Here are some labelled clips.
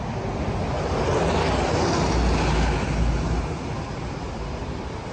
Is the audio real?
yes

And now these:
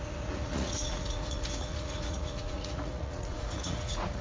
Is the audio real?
no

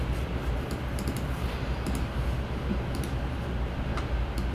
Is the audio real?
yes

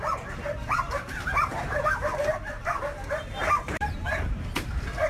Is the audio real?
no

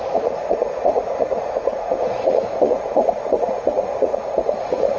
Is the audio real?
no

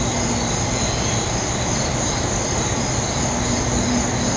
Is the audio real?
yes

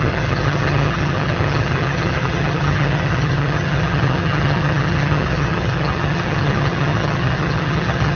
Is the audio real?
no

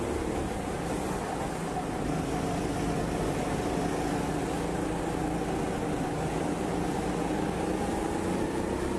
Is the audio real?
yes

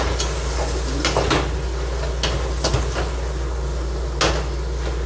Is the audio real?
yes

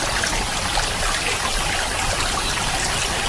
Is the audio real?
no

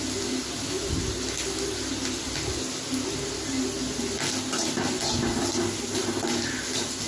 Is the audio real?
yes